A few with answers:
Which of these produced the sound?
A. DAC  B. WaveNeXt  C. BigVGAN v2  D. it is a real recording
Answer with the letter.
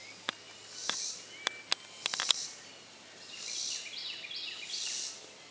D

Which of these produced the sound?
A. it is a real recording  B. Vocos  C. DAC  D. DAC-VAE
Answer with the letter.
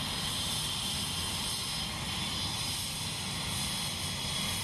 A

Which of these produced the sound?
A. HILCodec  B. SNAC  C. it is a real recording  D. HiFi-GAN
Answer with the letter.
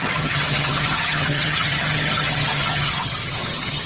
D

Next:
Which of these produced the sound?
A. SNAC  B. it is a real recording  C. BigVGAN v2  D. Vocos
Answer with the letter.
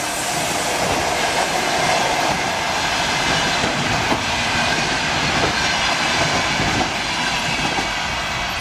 B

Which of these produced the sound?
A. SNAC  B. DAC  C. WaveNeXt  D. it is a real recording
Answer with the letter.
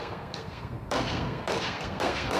A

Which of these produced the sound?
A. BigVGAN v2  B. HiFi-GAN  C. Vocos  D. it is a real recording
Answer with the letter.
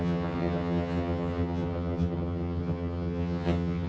B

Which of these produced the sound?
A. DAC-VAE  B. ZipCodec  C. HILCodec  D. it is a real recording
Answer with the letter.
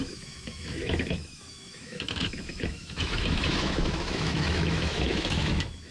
A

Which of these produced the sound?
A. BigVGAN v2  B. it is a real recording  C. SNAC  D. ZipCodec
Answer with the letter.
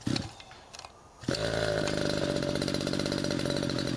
B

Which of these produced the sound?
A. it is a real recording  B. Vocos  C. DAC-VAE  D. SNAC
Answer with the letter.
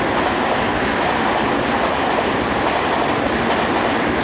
A